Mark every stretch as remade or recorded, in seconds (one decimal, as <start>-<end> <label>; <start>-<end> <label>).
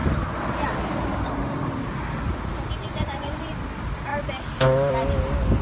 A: 0.0-2.8 recorded; 2.8-3.5 remade; 3.5-5.6 recorded